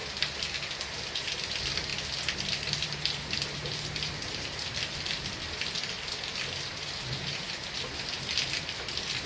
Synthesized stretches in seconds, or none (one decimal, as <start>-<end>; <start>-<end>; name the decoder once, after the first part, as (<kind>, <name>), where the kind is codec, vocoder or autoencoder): 1.1-9.3 (vocoder, BigVGAN v2)